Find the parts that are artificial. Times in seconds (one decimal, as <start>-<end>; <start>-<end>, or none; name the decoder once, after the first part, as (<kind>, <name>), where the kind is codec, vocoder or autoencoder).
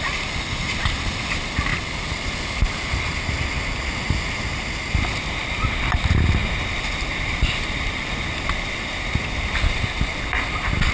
none